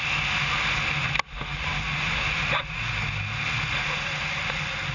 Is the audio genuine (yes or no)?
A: yes